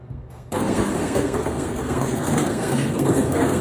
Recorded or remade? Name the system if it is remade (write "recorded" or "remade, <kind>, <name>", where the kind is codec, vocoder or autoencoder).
remade, codec, SNAC